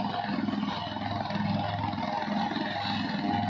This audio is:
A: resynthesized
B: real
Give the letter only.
B